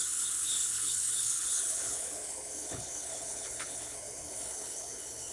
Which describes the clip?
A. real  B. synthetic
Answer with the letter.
B